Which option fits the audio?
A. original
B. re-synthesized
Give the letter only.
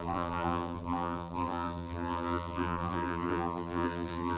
B